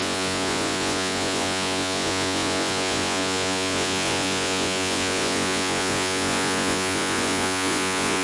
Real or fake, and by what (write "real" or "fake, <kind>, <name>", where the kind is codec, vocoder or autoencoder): fake, vocoder, Vocos